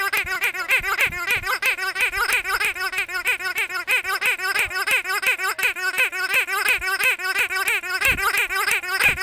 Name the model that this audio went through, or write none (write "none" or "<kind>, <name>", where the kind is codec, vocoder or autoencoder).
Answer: none